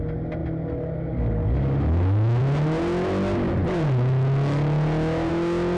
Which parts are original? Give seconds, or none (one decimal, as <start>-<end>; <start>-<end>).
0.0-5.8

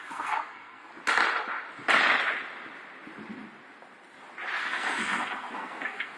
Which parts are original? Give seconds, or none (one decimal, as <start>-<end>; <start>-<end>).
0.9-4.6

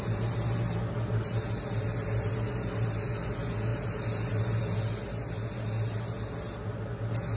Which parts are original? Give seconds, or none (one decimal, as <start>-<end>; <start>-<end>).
0.0-7.4